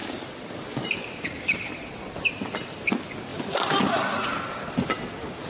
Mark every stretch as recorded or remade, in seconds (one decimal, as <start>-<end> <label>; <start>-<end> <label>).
0.0-1.7 remade; 1.7-3.3 recorded; 3.3-3.8 remade; 3.8-5.5 recorded